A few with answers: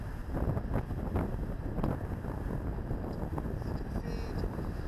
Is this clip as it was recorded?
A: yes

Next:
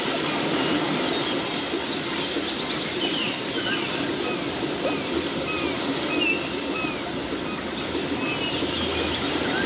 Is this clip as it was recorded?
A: yes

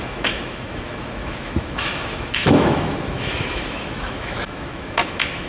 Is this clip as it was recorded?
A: no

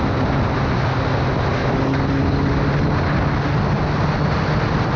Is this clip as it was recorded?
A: yes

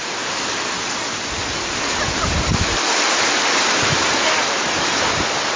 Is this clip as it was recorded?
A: yes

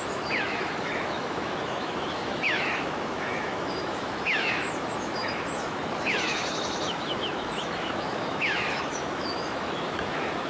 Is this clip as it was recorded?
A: no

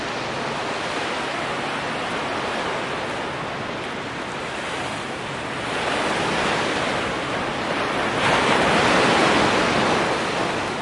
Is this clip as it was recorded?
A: yes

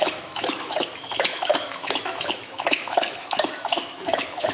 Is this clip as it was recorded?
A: no